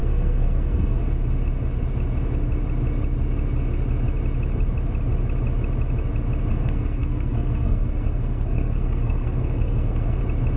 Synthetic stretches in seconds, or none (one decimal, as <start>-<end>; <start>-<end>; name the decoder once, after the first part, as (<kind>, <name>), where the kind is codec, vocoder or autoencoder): 0.0-1.0 (codec, SNAC); 6.5-10.2